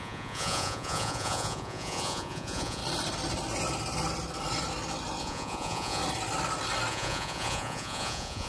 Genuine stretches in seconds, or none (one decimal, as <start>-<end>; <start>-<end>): 2.8-5.2; 6.0-6.9